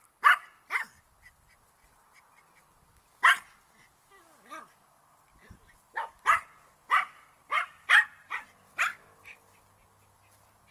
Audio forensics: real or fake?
real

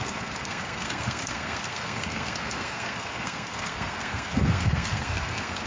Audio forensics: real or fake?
fake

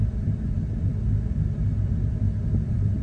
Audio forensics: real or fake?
fake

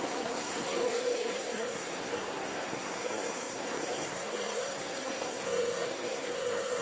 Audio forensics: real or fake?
fake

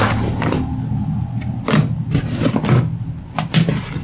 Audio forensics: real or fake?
fake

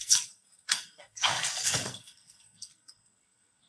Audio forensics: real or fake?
fake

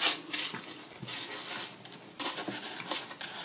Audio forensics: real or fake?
real